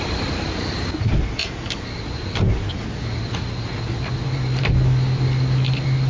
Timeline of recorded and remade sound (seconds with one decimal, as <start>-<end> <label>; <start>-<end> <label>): 0.0-1.4 remade; 1.4-3.2 recorded; 3.2-4.2 remade; 4.2-6.1 recorded